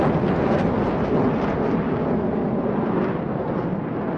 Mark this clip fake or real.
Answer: real